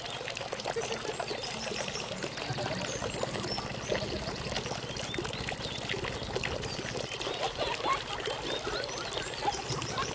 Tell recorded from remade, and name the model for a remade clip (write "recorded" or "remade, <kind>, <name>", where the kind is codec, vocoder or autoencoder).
recorded